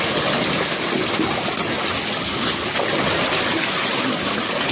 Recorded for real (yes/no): yes